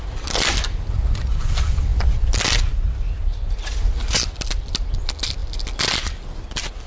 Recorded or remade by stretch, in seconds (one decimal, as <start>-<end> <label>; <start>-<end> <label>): 0.0-6.9 recorded